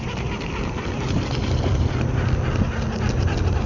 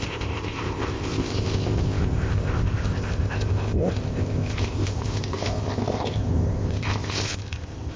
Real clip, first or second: first